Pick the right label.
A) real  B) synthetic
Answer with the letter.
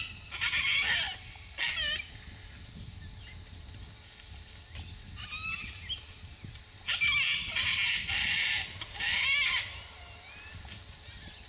A